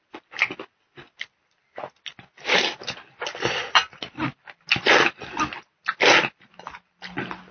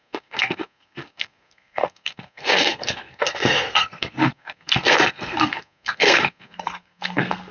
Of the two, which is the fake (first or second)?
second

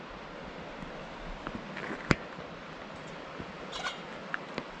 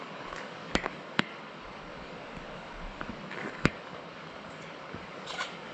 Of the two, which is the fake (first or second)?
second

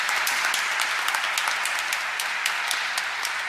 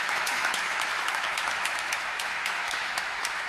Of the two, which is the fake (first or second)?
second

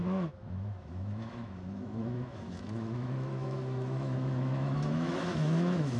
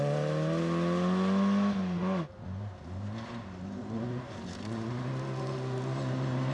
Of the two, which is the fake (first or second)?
first